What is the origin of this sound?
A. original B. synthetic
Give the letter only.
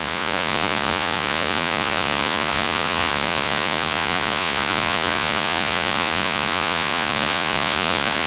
B